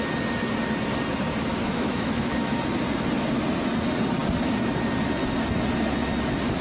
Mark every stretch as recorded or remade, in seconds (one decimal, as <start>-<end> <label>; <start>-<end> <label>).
0.0-1.5 recorded; 1.5-2.6 remade; 2.6-6.6 recorded